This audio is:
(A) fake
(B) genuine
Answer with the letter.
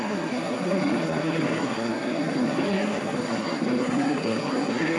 A